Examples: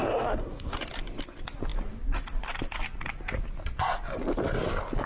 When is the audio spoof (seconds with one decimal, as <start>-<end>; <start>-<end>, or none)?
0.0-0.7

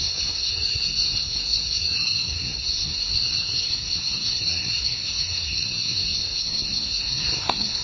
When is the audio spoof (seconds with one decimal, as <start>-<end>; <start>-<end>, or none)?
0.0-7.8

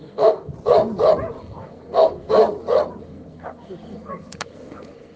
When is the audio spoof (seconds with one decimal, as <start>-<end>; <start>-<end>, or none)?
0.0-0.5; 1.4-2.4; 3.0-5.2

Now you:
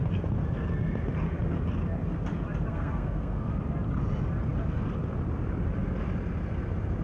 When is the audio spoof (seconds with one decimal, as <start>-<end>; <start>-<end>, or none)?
2.7-3.5

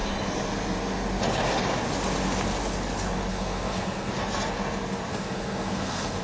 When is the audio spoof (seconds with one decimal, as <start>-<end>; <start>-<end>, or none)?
3.3-4.1; 5.1-6.2

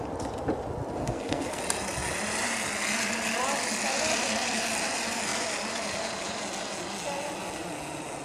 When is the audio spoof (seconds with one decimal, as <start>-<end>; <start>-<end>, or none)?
1.0-1.6